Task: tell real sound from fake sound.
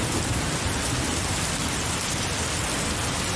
fake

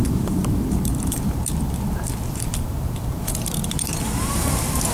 fake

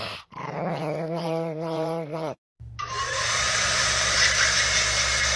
fake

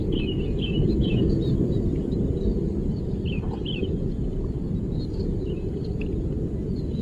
fake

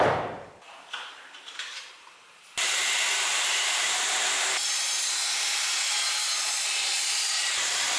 fake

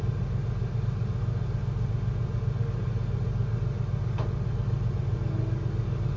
real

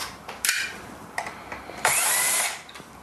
fake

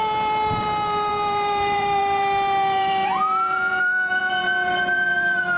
fake